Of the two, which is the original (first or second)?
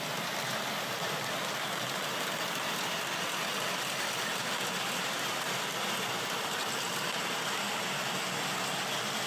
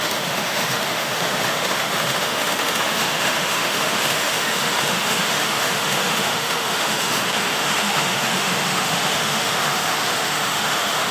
first